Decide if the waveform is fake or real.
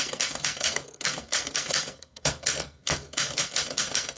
fake